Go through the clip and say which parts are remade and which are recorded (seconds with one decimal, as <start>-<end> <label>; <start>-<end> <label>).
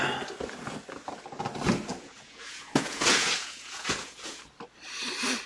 0.0-1.9 recorded; 1.9-4.4 remade; 4.4-5.5 recorded